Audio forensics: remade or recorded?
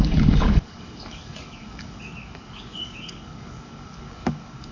remade